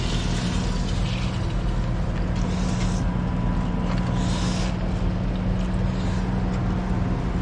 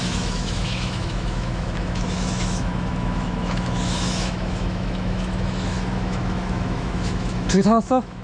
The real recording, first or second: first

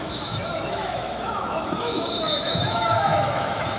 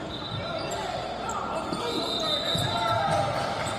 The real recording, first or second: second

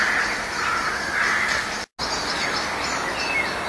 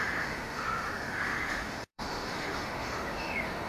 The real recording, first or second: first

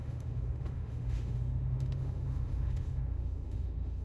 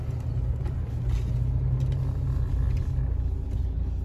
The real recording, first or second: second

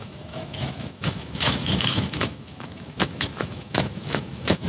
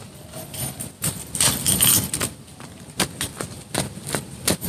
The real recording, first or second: second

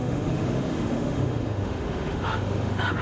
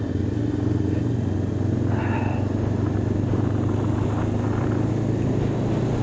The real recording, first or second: second